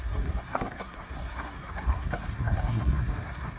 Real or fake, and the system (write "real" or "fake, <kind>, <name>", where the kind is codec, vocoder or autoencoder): fake, codec, SNAC